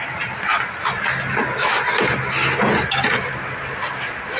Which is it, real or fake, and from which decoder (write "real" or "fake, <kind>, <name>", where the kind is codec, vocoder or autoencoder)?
real